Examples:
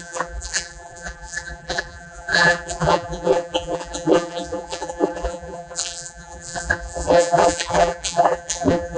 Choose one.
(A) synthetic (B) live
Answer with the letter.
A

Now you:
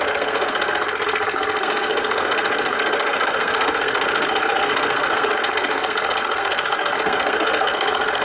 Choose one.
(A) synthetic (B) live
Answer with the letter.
A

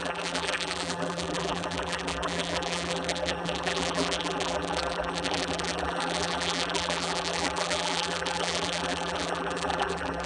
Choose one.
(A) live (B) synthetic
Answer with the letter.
B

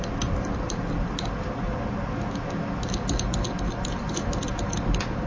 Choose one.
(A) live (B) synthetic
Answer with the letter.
A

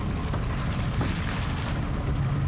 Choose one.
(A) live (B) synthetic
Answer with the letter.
A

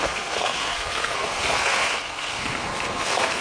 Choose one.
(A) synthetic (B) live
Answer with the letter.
A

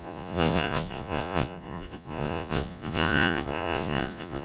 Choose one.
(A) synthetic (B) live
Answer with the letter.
A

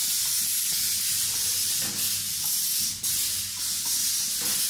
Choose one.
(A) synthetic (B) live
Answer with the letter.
B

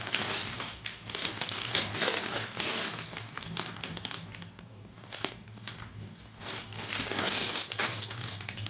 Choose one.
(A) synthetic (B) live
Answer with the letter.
A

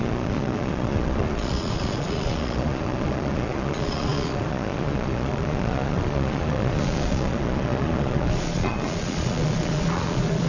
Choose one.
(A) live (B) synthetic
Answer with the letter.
B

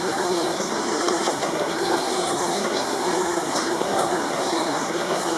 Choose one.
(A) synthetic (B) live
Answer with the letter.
A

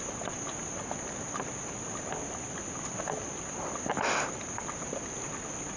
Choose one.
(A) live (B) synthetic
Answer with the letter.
A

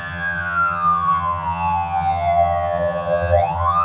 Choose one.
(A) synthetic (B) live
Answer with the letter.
A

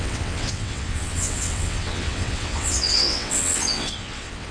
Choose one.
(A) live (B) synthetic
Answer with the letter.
B